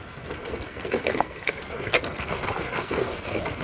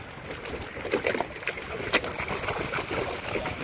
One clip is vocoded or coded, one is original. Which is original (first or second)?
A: second